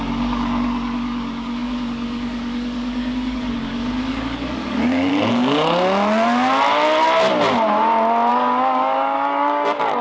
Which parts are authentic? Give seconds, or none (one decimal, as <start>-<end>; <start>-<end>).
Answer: 5.1-8.3